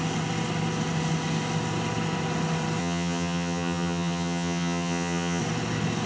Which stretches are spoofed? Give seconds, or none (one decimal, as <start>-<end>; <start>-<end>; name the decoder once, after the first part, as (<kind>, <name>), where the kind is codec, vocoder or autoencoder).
2.8-5.4 (vocoder, HiFi-GAN)